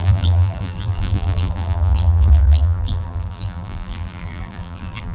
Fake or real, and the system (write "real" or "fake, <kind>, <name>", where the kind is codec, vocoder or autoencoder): fake, vocoder, BigVGAN v2